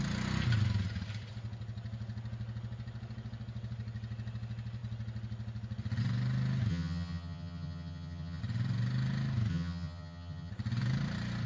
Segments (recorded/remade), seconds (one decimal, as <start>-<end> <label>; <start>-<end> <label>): 0.0-6.7 recorded; 6.7-8.4 remade; 8.4-9.5 recorded; 9.5-10.5 remade; 10.5-11.5 recorded